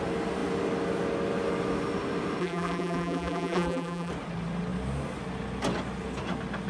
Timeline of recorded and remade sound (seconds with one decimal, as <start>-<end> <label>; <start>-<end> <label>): 0.0-2.4 recorded; 2.4-4.1 remade; 4.1-6.7 recorded